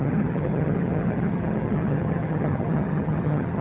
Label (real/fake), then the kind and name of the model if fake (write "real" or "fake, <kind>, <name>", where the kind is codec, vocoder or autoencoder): fake, vocoder, HiFi-GAN